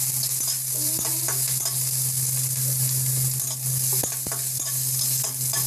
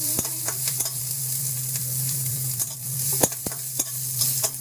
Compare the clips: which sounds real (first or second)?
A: first